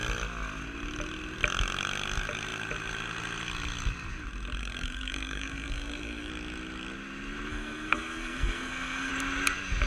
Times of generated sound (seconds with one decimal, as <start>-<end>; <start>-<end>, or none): 4.6-6.3; 7.5-9.1